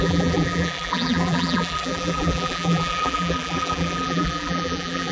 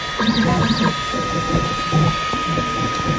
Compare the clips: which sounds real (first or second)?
second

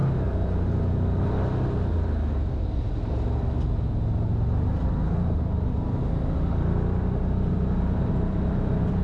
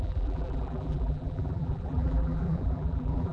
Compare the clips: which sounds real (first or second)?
first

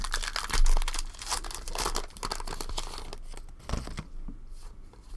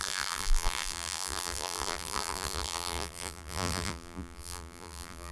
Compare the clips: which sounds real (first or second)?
first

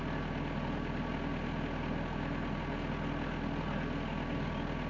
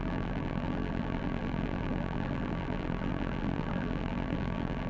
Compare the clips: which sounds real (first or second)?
first